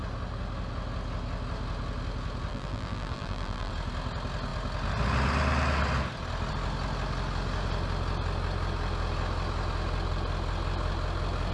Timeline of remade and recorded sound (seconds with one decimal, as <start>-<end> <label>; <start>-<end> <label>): 0.0-2.5 recorded; 2.5-3.7 remade; 3.7-11.5 recorded